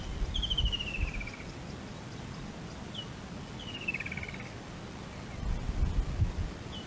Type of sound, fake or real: real